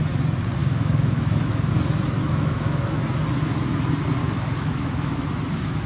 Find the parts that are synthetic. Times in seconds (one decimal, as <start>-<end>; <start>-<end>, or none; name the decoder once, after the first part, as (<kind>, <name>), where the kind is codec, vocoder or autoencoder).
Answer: 0.6-1.7 (autoencoder, DAC-VAE); 2.2-3.0; 4.2-5.3